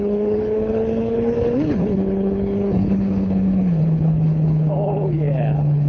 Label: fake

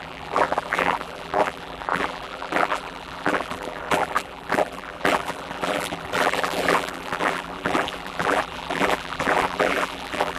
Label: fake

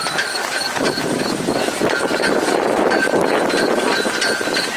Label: real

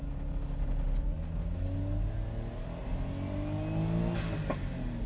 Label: real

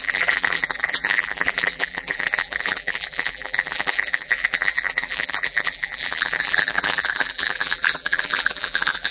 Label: fake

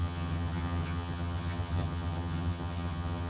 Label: fake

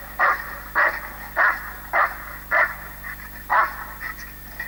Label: real